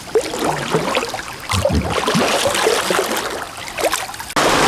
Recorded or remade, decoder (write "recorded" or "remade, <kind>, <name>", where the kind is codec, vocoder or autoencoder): recorded